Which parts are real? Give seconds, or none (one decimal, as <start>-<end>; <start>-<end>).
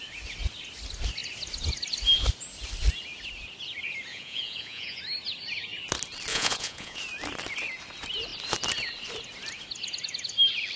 0.0-4.1; 5.0-6.3; 7.0-10.8